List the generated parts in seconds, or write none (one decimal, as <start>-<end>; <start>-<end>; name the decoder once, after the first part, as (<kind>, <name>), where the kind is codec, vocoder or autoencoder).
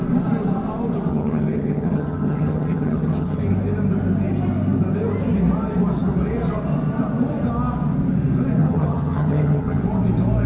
1.1-3.4 (vocoder, HiFi-GAN); 8.6-9.8